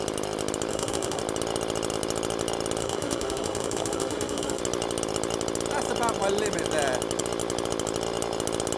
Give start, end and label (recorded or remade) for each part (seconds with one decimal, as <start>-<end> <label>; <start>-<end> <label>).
0.0-0.7 recorded; 0.7-1.2 remade; 1.2-2.8 recorded; 2.8-4.6 remade; 4.6-8.8 recorded